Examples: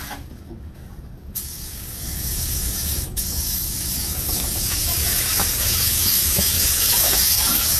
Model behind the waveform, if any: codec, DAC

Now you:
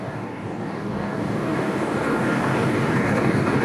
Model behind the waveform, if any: codec, DAC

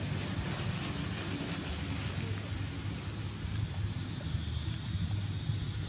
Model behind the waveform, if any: none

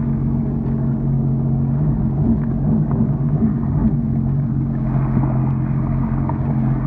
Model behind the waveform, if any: codec, DAC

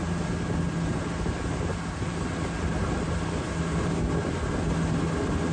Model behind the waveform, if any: none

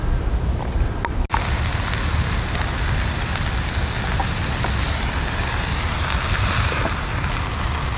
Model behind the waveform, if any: none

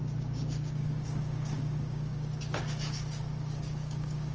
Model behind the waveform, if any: codec, DAC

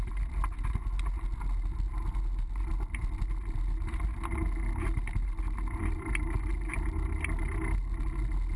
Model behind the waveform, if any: none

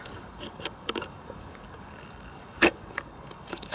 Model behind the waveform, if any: codec, DAC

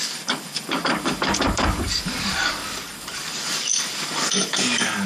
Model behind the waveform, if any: codec, DAC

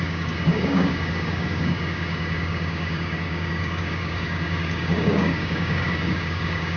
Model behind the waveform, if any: codec, DAC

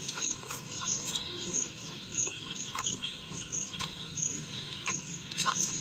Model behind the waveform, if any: codec, DAC